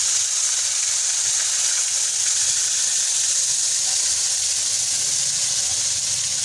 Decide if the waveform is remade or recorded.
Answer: recorded